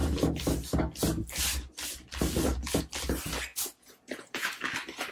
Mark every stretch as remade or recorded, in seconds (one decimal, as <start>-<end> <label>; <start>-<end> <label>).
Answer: 0.0-3.5 recorded; 3.5-4.5 remade; 4.5-5.1 recorded